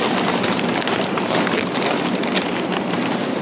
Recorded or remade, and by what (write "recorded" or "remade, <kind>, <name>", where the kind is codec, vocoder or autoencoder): recorded